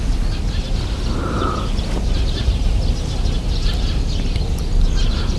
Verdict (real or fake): real